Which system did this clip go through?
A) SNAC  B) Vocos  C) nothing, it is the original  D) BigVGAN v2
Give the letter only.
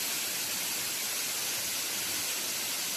C